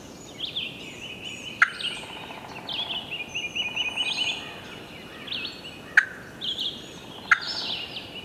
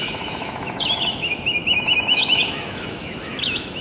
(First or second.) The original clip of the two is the first